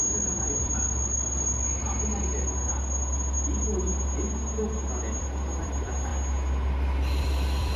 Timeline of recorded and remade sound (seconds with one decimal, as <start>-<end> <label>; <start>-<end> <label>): 0.0-0.7 remade; 0.7-5.2 recorded; 5.2-6.1 remade; 6.1-7.2 recorded; 7.2-7.8 remade